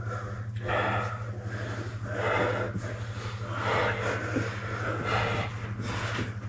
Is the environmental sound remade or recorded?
recorded